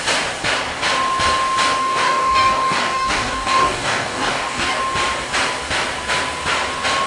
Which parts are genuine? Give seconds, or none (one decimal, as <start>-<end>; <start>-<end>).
0.0-1.8; 4.8-7.1